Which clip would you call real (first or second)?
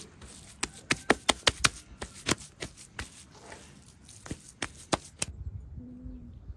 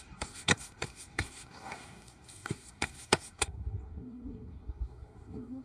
first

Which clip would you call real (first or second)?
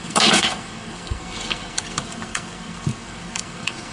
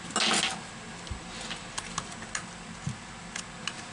second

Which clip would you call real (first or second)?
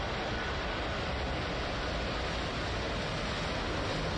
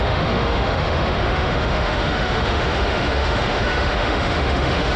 first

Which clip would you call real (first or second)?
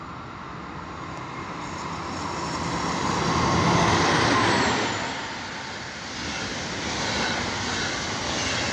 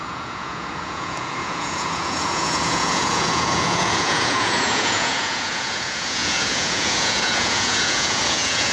first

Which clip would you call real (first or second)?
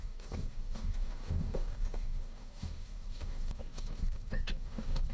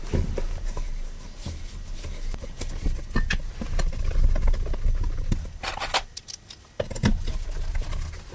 second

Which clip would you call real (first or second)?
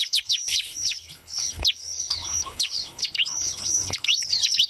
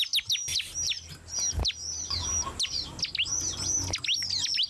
second